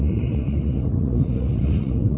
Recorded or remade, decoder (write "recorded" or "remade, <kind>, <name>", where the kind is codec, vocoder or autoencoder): remade, vocoder, Vocos